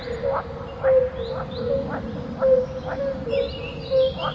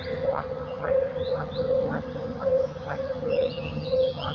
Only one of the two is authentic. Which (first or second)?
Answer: first